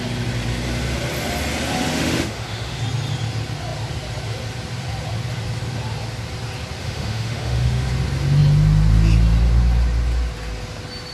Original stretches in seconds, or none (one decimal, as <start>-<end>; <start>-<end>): 0.0-1.9; 2.8-6.8; 7.9-11.1